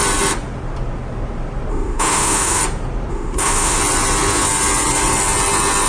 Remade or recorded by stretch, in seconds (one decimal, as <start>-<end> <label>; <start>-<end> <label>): 0.0-1.7 recorded; 1.7-2.6 remade; 2.6-3.1 recorded; 3.1-3.8 remade; 3.8-5.9 recorded